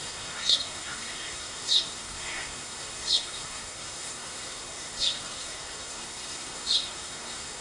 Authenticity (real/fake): fake